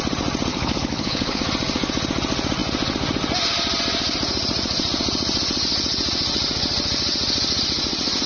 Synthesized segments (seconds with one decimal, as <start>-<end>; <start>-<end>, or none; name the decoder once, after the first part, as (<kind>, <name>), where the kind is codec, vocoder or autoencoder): 0.5-1.4 (codec, HILCodec)